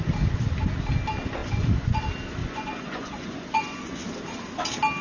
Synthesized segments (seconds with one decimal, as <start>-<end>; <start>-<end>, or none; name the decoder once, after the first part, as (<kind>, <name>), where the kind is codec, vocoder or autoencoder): 1.4-2.0 (vocoder, Vocos); 2.4-4.0